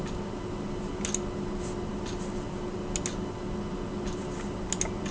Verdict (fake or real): real